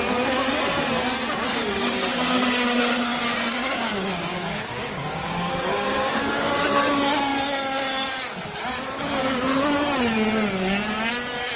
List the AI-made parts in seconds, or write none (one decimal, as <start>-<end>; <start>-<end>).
1.5-6.6